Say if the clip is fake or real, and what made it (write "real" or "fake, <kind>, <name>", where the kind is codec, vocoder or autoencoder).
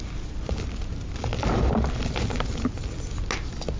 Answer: real